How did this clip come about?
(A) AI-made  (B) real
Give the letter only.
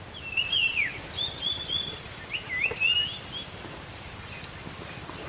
B